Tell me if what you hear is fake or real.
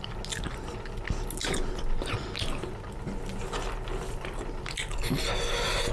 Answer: real